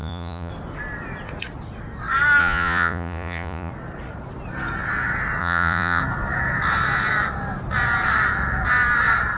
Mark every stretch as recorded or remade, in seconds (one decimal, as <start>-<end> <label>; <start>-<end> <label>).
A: 0.0-0.5 remade; 0.5-2.4 recorded; 2.4-3.7 remade; 3.7-5.4 recorded; 5.4-6.0 remade; 6.0-9.4 recorded